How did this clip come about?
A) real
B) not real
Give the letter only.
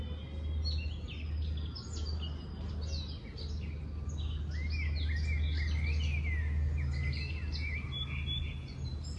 A